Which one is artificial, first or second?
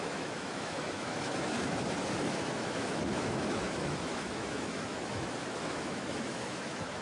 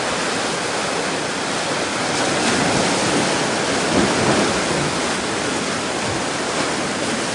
first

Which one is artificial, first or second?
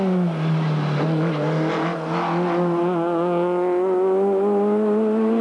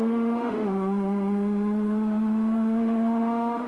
second